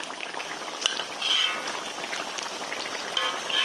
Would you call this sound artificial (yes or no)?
no